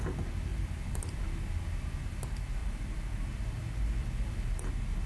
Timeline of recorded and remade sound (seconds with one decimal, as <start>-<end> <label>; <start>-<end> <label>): 0.0-0.5 recorded; 0.5-1.2 remade; 1.2-2.6 recorded; 2.6-3.3 remade; 3.3-5.1 recorded